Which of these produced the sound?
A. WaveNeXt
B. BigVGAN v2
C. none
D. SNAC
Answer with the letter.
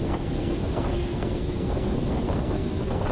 D